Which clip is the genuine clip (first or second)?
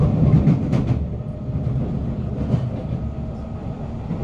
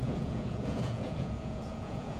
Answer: first